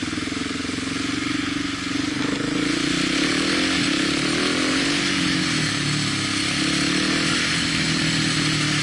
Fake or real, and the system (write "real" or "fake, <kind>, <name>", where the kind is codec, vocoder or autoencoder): real